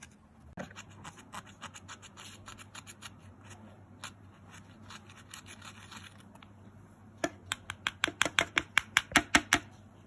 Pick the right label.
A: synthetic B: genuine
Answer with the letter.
B